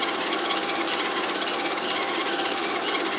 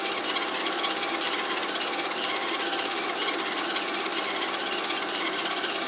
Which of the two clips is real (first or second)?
second